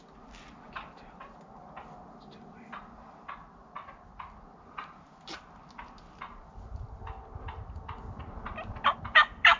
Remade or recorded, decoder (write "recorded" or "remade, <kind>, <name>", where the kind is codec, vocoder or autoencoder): recorded